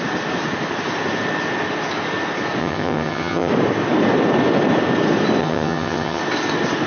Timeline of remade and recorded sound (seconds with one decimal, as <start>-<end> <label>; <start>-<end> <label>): 0.0-2.6 recorded; 2.6-3.5 remade; 3.5-5.4 recorded; 5.4-6.2 remade; 6.2-6.9 recorded